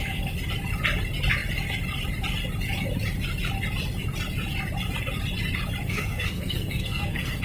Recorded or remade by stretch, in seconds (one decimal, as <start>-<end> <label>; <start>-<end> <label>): 0.0-5.8 recorded; 5.8-7.4 remade

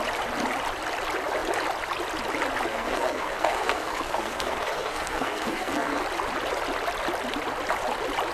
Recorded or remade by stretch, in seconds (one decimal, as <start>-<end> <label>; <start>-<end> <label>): 0.0-2.7 recorded; 2.7-6.0 remade; 6.0-8.3 recorded